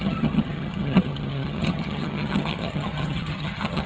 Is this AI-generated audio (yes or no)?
yes